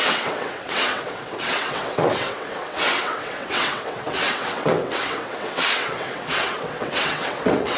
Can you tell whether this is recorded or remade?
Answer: remade